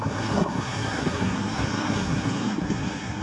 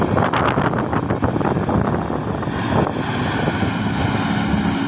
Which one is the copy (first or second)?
first